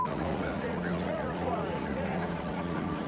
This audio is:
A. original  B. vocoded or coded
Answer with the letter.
B